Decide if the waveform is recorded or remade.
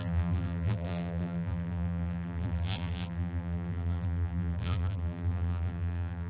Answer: remade